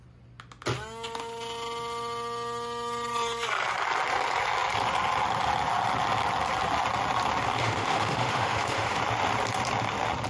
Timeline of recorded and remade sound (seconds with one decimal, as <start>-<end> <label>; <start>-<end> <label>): 0.0-7.6 recorded; 7.6-9.0 remade; 9.0-10.3 recorded